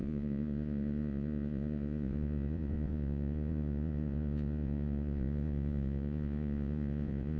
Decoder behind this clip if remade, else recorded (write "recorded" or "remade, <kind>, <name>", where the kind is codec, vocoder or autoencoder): remade, vocoder, Vocos